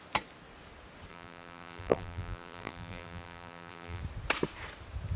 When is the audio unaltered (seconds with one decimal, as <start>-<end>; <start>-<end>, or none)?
0.0-1.1; 4.0-5.2